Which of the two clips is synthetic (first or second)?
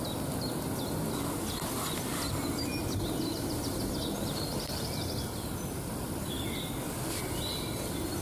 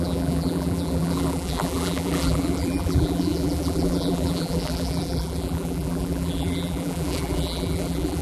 second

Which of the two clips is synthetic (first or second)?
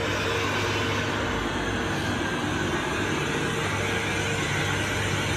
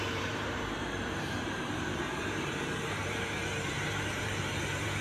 second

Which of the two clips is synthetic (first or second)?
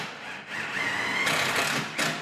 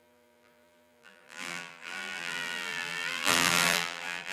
second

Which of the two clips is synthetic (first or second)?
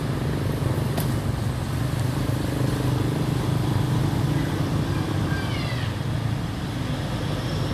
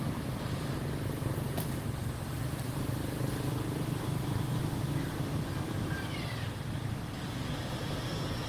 second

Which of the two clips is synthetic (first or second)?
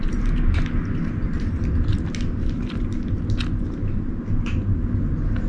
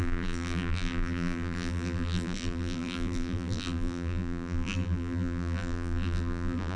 second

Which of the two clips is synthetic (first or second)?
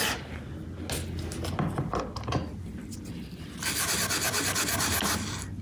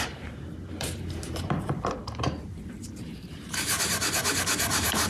second